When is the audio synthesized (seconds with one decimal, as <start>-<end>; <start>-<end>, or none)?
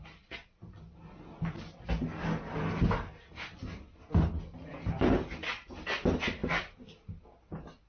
none